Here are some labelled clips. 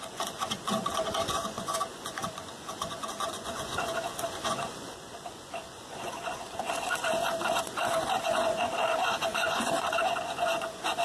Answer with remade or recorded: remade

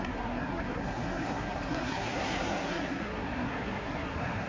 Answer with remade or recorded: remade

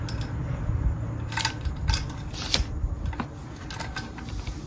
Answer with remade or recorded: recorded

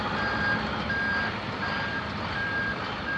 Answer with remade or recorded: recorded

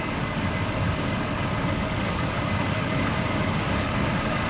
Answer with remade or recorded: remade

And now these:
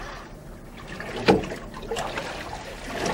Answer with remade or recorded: recorded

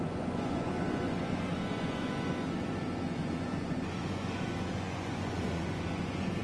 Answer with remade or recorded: remade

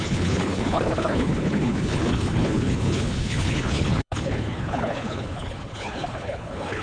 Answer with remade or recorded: remade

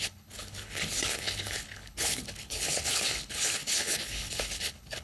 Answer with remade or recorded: remade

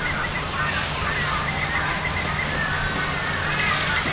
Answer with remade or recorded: recorded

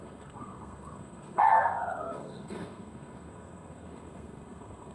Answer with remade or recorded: remade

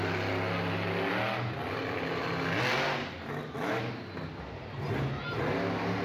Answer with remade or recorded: recorded